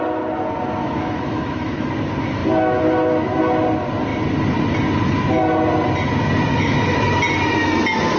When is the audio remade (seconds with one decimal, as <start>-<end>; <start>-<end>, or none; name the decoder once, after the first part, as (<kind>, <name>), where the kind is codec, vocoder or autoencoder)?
0.8-1.9 (autoencoder, DAC-VAE); 6.5-7.0